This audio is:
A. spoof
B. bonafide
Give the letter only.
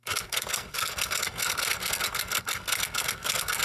A